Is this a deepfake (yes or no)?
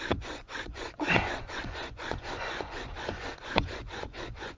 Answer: yes